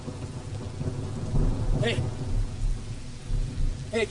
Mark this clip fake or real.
real